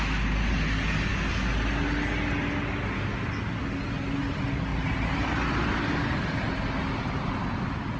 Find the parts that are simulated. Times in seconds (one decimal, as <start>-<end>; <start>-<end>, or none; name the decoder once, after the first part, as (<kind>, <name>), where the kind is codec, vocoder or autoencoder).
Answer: none